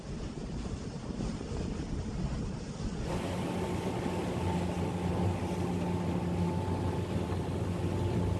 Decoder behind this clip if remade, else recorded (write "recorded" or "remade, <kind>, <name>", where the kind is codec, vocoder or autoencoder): recorded